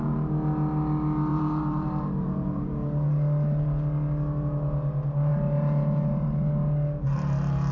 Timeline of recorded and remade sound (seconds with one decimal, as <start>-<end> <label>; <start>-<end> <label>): 0.0-1.3 recorded; 1.3-2.7 remade; 2.7-7.7 recorded